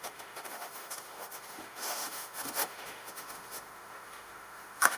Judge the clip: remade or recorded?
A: remade